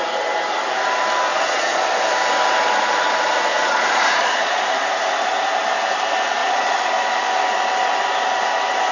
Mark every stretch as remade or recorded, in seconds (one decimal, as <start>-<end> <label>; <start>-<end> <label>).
0.0-1.3 recorded; 1.3-1.8 remade; 1.8-3.5 recorded; 3.5-4.6 remade; 4.6-6.4 recorded; 6.4-6.9 remade; 6.9-8.9 recorded